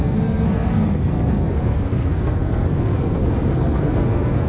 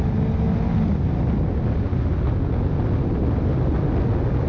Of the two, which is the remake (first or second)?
first